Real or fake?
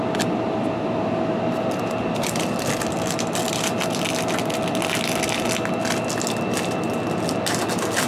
real